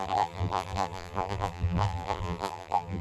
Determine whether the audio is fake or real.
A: fake